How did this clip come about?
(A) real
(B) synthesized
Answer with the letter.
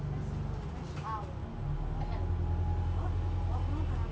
A